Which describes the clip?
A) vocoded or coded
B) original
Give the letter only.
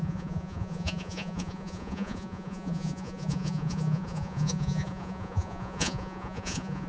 A